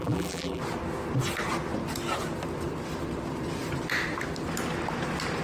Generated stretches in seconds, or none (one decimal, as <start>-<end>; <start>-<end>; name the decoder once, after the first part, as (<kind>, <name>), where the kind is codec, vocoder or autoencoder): 0.0-0.6 (vocoder, BigVGAN v2)